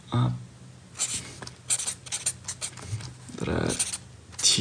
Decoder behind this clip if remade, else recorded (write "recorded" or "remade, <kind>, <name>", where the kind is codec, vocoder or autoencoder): recorded